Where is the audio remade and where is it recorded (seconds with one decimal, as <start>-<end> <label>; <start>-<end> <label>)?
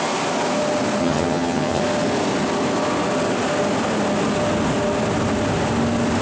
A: 0.0-1.0 recorded; 1.0-1.8 remade; 1.8-6.2 recorded